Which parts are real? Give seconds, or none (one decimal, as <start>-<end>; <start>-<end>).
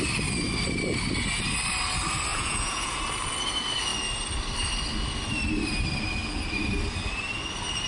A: 0.0-2.3; 3.0-7.9